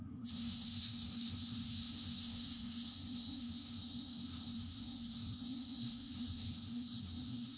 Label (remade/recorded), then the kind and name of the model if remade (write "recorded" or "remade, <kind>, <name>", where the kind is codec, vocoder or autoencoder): remade, codec, SNAC